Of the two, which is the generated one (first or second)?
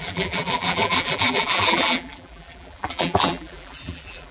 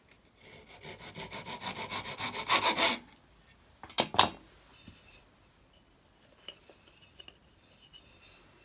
first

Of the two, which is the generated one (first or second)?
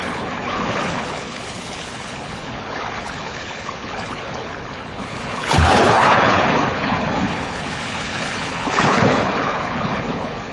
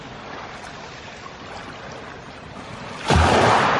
first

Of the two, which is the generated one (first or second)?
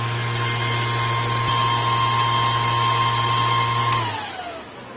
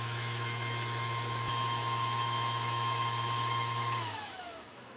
second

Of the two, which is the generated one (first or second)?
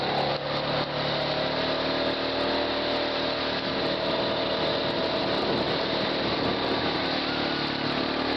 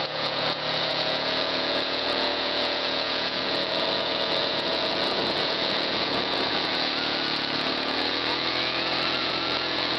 second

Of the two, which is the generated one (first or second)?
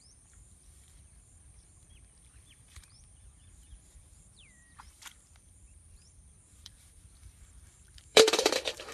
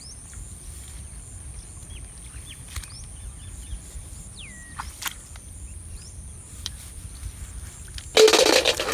first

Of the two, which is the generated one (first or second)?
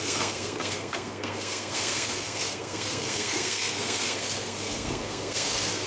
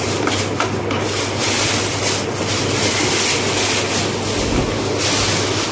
first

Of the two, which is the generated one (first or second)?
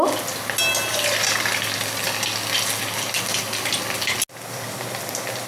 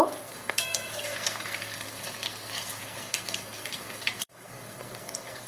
second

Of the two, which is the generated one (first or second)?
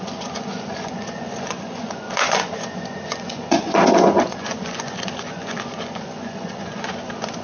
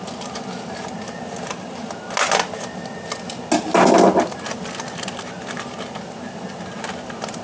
first